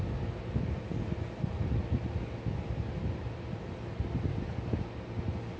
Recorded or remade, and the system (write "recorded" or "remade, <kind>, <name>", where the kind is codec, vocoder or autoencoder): recorded